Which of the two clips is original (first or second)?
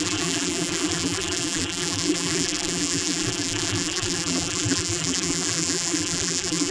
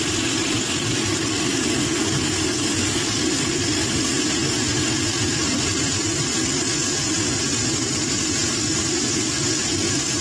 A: second